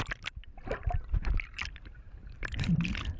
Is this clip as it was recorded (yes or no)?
yes